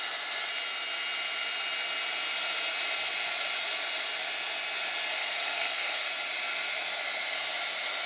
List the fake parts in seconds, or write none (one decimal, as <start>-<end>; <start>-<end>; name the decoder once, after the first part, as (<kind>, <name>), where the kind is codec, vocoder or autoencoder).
5.2-6.1 (codec, SNAC)